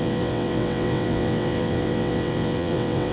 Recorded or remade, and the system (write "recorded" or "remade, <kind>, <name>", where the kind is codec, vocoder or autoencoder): remade, vocoder, WaveNeXt